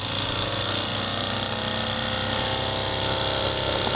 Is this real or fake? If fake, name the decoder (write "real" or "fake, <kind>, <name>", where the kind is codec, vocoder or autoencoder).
real